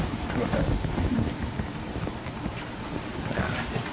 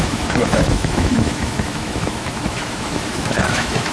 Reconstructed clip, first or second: second